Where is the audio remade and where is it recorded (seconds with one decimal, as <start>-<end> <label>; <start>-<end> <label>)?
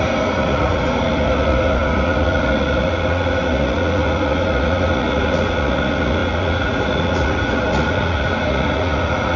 0.0-9.4 remade